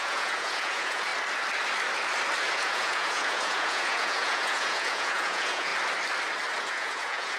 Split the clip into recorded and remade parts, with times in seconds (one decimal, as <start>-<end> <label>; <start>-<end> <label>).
0.0-1.1 remade; 1.1-2.5 recorded; 2.5-5.7 remade; 5.7-6.6 recorded; 6.6-7.4 remade